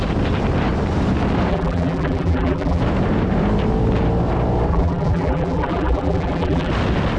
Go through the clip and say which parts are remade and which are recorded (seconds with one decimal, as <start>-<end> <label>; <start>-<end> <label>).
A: 0.0-1.5 recorded; 1.5-2.8 remade; 2.8-4.7 recorded; 4.7-6.7 remade; 6.7-7.2 recorded